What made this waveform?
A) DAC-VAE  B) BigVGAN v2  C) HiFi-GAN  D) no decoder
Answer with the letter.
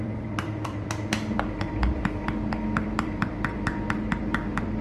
B